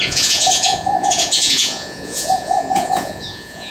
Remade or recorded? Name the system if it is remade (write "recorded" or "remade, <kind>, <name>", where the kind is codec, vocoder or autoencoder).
remade, vocoder, Vocos